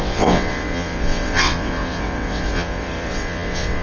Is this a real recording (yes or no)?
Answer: no